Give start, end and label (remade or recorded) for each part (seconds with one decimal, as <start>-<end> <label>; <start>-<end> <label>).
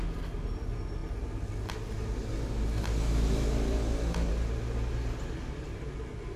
0.0-6.4 recorded